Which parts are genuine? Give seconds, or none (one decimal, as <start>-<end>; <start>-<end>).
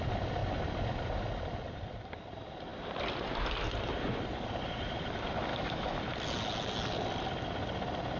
0.0-5.5; 6.0-8.2